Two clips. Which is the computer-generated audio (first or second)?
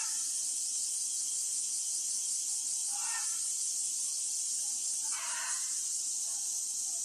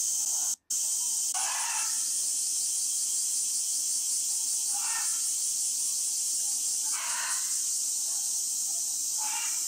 first